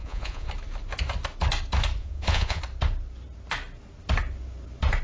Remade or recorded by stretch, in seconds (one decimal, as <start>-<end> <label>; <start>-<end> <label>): 0.0-0.5 remade; 0.5-2.0 recorded; 2.0-2.6 remade; 2.6-5.0 recorded